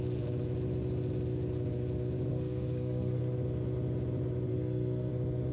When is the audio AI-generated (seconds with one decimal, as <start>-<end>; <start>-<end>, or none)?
2.3-3.2; 4.5-5.1